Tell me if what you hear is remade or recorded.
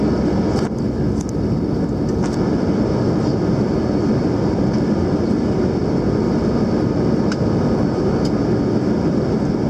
recorded